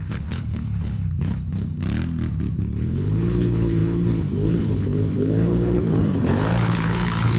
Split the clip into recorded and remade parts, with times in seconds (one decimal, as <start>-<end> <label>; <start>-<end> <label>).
0.0-1.8 remade; 1.8-2.6 recorded; 2.6-7.4 remade